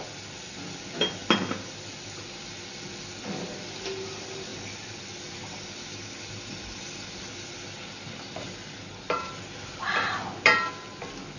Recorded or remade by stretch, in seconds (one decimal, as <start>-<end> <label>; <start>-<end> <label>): 0.0-4.5 recorded; 4.5-9.4 remade; 9.4-11.4 recorded

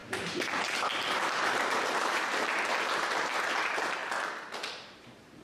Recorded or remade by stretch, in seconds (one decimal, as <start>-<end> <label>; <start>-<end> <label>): 0.0-4.0 remade; 4.0-5.0 recorded; 5.0-5.4 remade

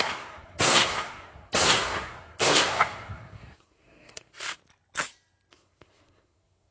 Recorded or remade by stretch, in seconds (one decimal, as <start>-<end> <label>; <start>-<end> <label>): 0.0-4.6 remade; 4.6-5.5 recorded; 5.5-6.7 remade